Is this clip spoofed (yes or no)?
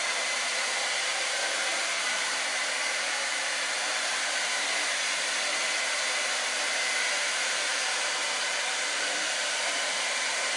yes